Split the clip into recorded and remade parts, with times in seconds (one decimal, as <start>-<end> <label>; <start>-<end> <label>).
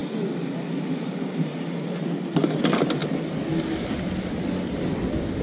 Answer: 0.0-2.6 recorded; 2.6-3.0 remade; 3.0-5.4 recorded